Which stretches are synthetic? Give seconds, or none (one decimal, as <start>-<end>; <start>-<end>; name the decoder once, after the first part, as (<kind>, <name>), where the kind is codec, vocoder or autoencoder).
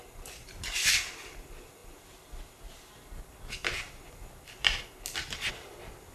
none